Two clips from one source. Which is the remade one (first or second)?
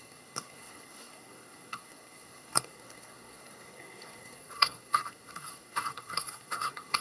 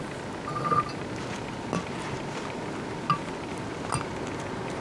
first